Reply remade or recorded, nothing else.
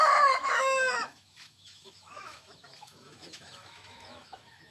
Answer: remade